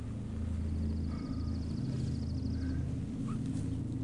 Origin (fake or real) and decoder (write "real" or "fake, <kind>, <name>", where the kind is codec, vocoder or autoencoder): real